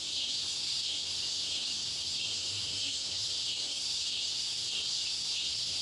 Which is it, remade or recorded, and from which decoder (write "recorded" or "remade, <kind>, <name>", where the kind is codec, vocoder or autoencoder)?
remade, codec, SNAC